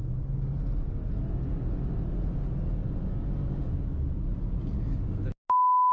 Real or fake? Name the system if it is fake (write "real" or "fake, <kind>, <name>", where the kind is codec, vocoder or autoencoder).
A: real